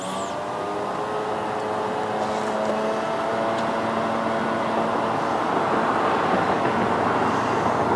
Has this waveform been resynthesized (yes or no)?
no